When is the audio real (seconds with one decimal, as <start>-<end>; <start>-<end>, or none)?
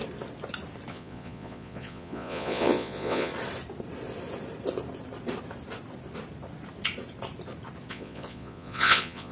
0.0-0.9; 3.3-7.9